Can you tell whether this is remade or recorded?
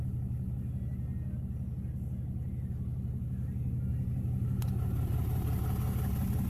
recorded